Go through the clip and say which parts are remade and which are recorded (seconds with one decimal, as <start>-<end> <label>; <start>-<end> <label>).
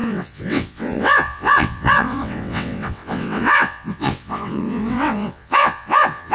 0.0-6.3 remade